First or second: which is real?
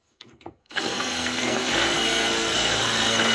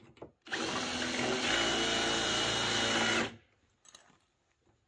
second